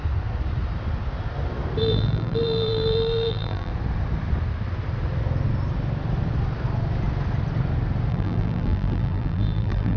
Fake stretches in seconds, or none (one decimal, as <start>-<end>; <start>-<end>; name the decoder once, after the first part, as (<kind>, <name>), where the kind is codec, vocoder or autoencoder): 1.8-3.7 (vocoder, BigVGAN v2); 8.1-10.0

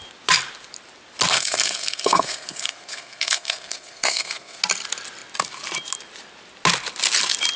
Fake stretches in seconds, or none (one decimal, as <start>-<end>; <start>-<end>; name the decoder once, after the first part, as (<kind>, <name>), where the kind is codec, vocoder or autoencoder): 1.3-4.6 (codec, SNAC)